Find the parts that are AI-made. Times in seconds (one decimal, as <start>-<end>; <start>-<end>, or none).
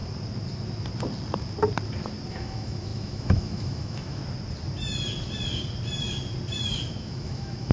2.3-4.2; 6.9-7.7